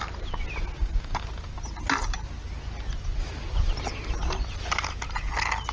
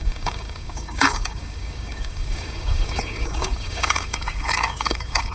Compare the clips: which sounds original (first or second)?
first